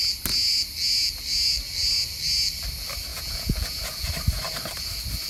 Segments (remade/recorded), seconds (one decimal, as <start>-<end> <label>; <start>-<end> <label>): 0.0-3.1 recorded; 3.1-4.1 remade; 4.1-5.3 recorded